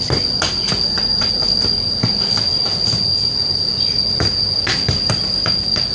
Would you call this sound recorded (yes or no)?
yes